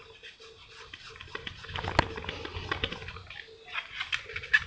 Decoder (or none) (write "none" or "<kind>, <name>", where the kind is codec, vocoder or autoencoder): none